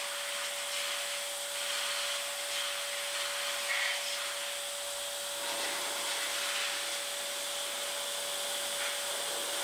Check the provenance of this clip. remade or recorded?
recorded